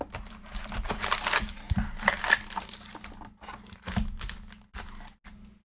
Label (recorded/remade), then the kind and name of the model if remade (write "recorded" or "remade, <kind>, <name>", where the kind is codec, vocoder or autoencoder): recorded